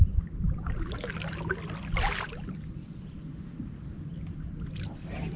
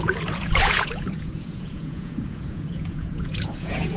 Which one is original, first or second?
first